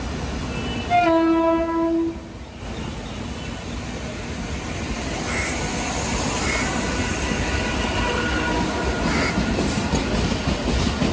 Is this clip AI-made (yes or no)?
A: no